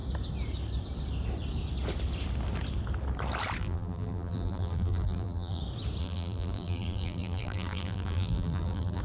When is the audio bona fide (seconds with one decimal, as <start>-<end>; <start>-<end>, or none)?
0.0-3.6; 5.6-6.0